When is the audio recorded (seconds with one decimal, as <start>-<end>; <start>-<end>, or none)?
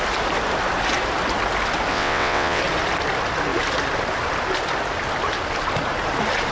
0.0-1.9; 2.6-6.5